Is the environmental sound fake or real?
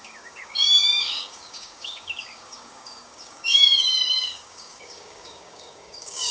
fake